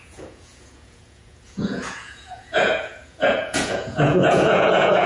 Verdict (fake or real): fake